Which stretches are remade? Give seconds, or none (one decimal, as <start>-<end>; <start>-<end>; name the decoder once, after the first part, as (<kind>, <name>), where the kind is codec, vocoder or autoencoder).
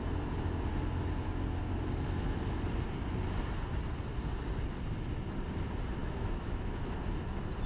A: 6.0-6.9 (autoencoder, DAC-VAE)